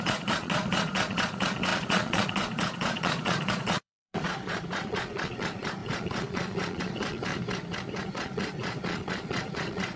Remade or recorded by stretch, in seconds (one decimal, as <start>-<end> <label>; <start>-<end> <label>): 0.0-7.3 remade; 7.3-8.0 recorded; 8.0-10.0 remade